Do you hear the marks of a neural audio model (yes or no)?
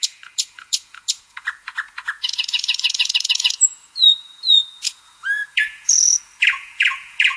yes